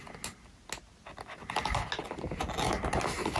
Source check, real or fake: real